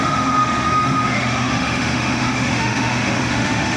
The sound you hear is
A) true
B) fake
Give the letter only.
B